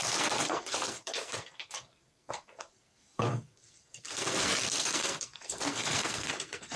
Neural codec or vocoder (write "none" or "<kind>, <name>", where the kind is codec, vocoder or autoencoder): codec, SNAC